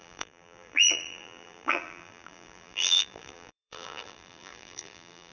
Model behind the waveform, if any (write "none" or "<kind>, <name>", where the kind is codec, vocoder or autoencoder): vocoder, BigVGAN v2